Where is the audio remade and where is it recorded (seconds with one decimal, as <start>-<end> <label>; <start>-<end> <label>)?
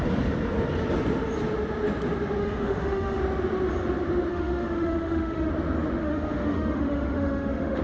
0.0-2.4 recorded; 2.4-3.2 remade; 3.2-4.3 recorded; 4.3-5.5 remade; 5.5-6.0 recorded; 6.0-7.8 remade